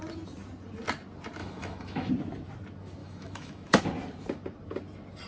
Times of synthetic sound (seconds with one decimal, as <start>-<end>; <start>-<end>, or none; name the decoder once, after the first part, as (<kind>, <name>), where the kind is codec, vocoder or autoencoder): 1.4-2.1 (autoencoder, DAC-VAE); 3.0-3.8